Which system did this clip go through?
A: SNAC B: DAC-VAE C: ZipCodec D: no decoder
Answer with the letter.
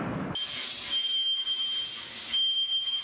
D